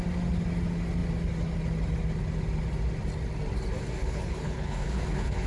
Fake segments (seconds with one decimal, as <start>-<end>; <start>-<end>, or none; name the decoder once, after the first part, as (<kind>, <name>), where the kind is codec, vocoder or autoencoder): 4.0-5.5 (codec, HILCodec)